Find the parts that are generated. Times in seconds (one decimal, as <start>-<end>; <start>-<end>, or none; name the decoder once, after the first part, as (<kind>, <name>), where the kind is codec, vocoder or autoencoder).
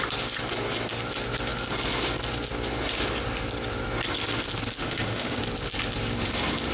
4.8-5.4 (autoencoder, DAC-VAE)